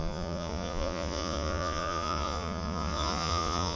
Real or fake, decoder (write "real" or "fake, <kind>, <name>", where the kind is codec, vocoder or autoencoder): fake, vocoder, Vocos